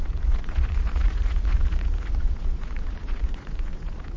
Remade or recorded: remade